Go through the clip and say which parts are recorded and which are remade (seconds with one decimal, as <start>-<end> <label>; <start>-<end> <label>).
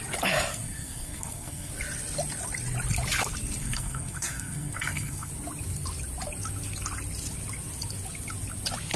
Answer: 0.0-0.5 recorded; 0.5-1.7 remade; 1.7-3.6 recorded; 3.6-5.3 remade; 5.3-9.0 recorded